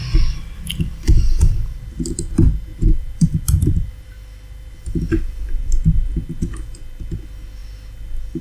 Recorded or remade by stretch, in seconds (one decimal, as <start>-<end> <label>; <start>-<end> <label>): 0.0-1.8 remade; 1.8-2.7 recorded; 2.7-6.3 remade; 6.3-8.4 recorded